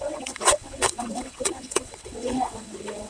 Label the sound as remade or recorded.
remade